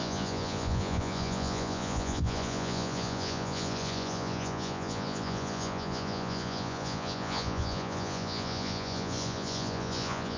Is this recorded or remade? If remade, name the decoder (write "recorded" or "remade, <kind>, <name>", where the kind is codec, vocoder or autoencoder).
remade, vocoder, Vocos